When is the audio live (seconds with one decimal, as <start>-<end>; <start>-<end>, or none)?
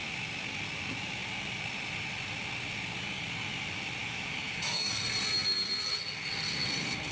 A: 0.0-4.0; 4.9-7.1